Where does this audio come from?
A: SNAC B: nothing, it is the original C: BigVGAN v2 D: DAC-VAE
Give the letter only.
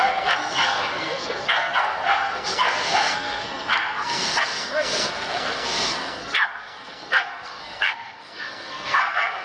A